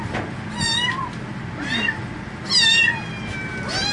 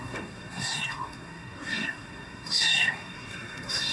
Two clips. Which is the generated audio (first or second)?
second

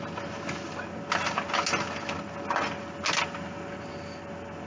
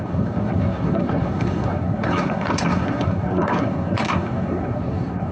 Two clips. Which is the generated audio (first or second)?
second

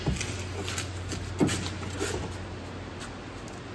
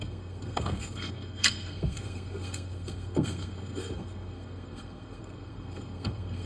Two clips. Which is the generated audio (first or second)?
second